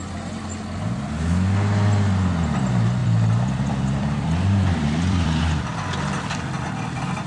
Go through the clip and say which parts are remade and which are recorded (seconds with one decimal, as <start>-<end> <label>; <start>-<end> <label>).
0.0-3.0 recorded; 3.0-5.4 remade; 5.4-7.3 recorded